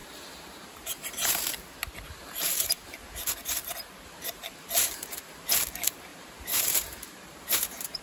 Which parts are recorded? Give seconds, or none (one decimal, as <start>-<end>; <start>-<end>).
1.4-1.8; 5.5-6.1